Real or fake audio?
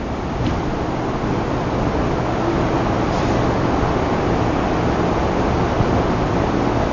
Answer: real